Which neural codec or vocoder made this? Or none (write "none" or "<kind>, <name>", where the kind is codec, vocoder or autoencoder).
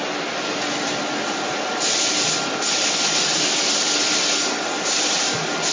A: none